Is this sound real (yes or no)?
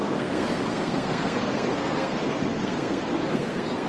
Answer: no